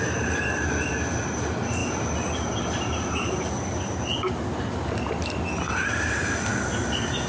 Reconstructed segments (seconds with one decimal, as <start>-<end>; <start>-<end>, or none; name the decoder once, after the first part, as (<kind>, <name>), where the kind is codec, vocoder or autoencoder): none